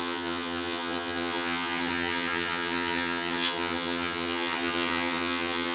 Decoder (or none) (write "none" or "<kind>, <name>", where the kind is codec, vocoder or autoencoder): vocoder, HiFi-GAN